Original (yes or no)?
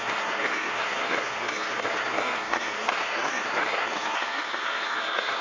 no